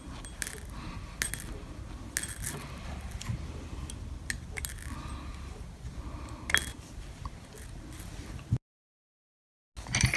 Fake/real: real